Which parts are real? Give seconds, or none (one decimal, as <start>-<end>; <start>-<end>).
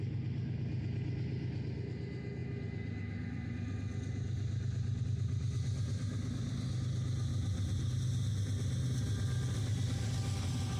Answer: 0.0-10.8